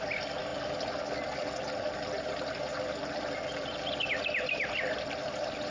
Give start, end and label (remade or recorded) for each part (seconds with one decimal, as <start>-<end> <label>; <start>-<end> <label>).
0.0-5.7 recorded